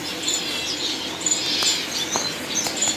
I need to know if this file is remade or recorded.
recorded